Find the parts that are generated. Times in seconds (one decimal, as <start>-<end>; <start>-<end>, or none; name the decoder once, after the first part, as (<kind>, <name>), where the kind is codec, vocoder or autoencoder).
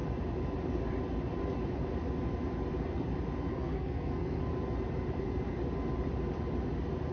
3.5-4.4 (codec, SNAC)